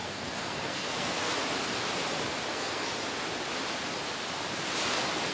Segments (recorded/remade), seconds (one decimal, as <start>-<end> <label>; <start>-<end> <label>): 0.0-1.3 remade; 1.3-2.5 recorded; 2.5-2.9 remade; 2.9-5.3 recorded